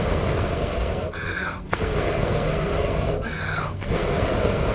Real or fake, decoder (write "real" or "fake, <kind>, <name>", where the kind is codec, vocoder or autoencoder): fake, codec, SNAC